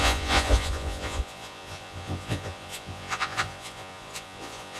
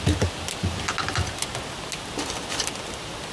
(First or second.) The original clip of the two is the second